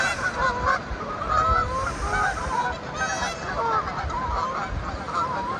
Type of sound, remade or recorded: recorded